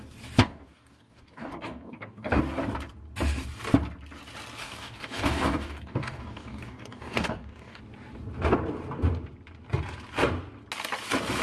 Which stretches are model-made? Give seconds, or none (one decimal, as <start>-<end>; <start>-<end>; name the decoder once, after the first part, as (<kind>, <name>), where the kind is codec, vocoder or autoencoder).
0.4-2.4 (codec, DAC); 4.6-7.8